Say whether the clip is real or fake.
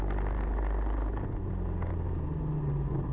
real